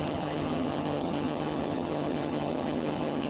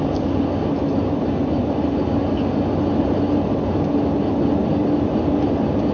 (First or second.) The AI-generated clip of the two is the first